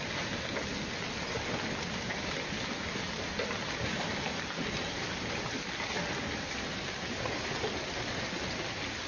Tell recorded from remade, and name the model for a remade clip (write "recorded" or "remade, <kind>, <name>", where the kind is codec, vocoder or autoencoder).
recorded